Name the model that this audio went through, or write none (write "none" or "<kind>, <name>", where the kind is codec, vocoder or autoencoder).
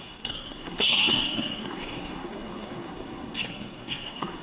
codec, SNAC